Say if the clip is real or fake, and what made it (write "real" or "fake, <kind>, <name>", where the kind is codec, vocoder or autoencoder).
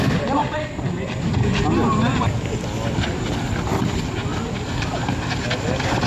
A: real